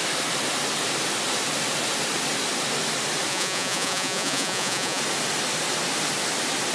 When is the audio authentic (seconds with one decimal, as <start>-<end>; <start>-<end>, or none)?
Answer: 0.0-3.3; 5.0-6.7